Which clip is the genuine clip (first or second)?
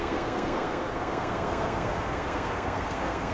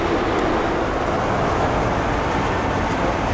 second